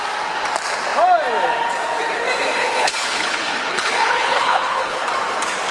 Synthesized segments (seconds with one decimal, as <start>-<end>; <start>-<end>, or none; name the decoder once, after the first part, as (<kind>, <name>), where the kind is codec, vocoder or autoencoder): 2.6-5.1 (codec, HILCodec)